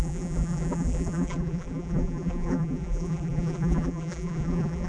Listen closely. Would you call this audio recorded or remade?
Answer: remade